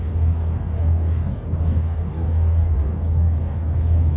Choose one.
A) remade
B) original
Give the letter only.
A